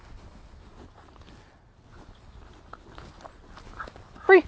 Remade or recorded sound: recorded